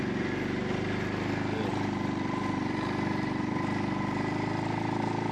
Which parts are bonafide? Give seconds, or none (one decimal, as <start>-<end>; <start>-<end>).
0.0-5.3